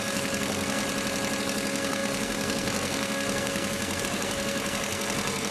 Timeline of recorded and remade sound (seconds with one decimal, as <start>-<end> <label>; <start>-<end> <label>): 0.0-0.8 remade; 0.8-1.4 recorded; 1.4-5.5 remade